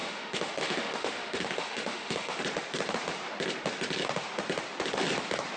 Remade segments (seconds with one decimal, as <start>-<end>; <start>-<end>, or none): 0.0-2.4